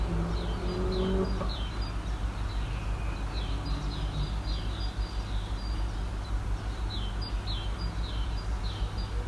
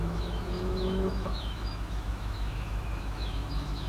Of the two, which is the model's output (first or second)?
second